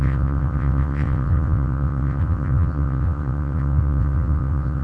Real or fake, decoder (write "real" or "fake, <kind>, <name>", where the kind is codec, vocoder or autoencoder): fake, vocoder, WaveNeXt